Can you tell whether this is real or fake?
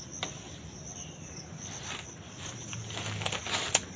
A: real